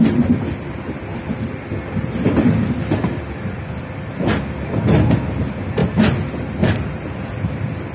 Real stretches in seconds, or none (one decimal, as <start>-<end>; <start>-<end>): 0.0-7.9